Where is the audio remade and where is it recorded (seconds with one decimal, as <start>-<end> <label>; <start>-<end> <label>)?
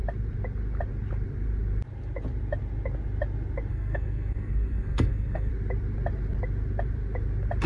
0.0-3.7 recorded; 3.7-5.5 remade; 5.5-7.7 recorded